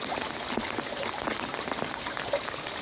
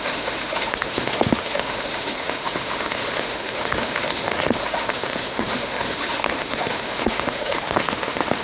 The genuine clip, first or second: first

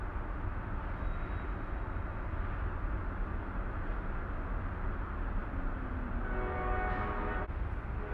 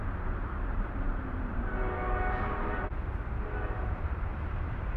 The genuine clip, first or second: first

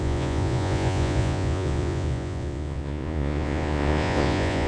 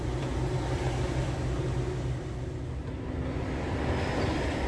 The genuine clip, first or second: second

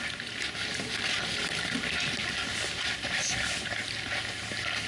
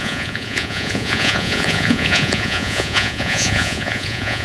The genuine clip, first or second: first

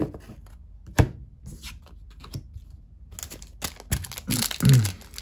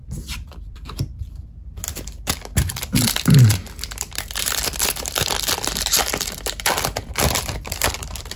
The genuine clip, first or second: first